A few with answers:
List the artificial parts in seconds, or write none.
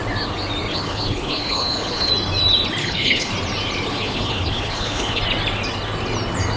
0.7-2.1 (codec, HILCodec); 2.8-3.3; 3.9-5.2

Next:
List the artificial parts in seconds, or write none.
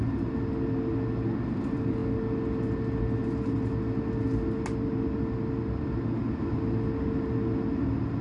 none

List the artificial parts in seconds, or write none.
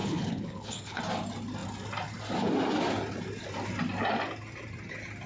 0.0-1.0 (codec, HILCodec)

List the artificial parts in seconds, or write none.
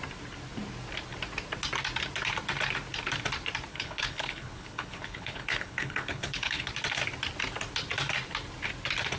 3.7-6.7 (codec, HILCodec)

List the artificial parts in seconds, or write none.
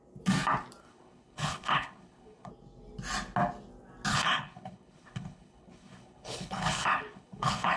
0.8-2.5 (codec, HILCodec); 4.1-7.8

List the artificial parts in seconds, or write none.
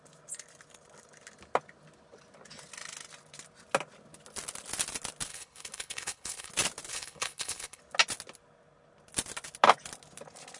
5.3-6.5 (codec, HILCodec); 6.9-7.8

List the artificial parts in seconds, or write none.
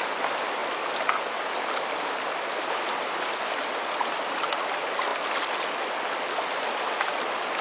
none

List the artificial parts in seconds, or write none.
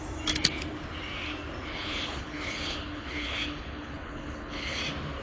1.7-4.8 (codec, HILCodec)